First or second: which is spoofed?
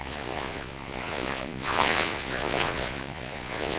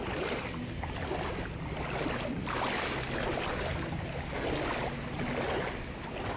first